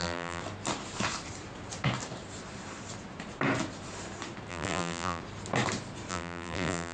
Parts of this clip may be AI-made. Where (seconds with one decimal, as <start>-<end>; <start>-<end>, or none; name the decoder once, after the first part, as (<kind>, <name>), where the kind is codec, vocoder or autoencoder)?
0.0-0.4 (vocoder, BigVGAN v2); 4.5-5.2; 6.1-6.9